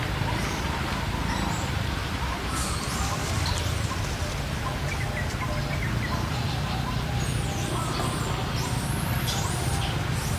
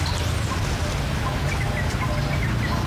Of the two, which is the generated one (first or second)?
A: first